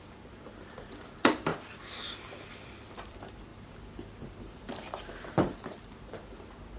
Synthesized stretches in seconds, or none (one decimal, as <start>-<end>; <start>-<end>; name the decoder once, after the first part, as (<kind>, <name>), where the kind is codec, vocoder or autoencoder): 0.0-6.8 (vocoder, BigVGAN v2)